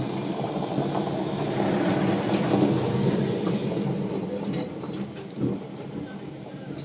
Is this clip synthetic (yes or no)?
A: no